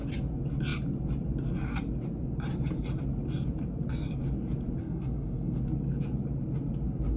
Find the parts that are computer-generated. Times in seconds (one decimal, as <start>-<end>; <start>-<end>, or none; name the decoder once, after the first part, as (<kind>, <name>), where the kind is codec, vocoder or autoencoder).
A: 4.8-5.6 (codec, SNAC)